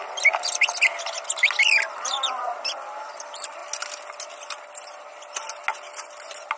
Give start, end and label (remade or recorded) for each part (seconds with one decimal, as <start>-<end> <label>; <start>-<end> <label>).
0.0-6.6 recorded